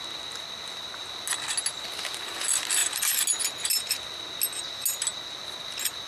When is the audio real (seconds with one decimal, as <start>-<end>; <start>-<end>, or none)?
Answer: 0.0-6.1